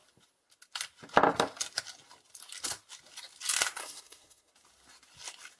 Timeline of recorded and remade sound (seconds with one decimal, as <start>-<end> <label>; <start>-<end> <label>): 0.0-3.8 recorded; 3.8-4.5 remade; 4.5-5.6 recorded

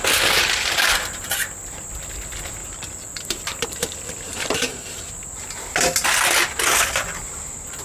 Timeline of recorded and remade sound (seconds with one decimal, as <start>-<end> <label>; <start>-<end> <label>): 0.0-2.6 recorded; 2.6-4.7 remade; 4.7-7.8 recorded